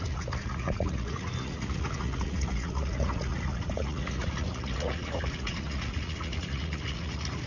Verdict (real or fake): fake